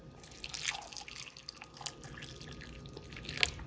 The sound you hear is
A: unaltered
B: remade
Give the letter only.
A